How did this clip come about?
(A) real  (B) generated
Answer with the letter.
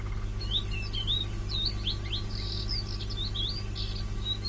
A